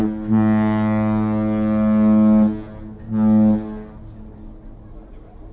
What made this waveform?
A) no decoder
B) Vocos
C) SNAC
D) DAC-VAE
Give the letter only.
A